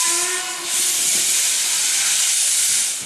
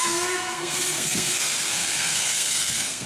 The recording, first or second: first